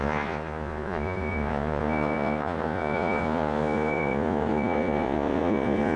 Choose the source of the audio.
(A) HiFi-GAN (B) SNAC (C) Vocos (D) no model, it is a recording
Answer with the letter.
C